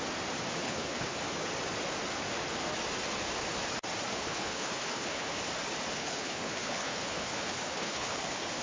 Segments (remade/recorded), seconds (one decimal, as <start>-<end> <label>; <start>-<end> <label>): 0.0-0.6 recorded; 0.6-1.2 remade; 1.2-4.1 recorded; 4.1-5.4 remade; 5.4-6.0 recorded; 6.0-8.6 remade